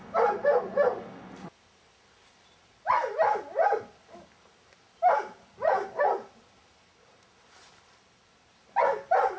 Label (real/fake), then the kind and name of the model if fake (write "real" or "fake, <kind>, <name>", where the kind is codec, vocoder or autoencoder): real